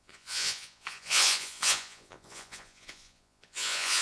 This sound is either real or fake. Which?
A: fake